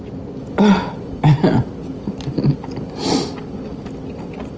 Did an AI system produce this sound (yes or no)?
no